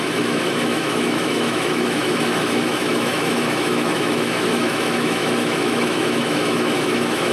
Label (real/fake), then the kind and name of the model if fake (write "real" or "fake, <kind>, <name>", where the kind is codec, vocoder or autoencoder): fake, autoencoder, DAC-VAE